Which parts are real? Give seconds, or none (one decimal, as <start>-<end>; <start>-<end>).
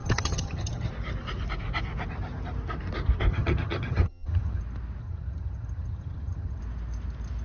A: 0.9-3.3; 4.6-5.0; 6.6-7.4